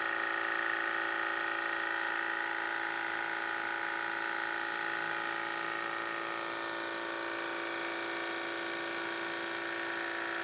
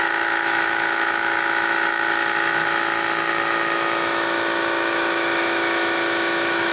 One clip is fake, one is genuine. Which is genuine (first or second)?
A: first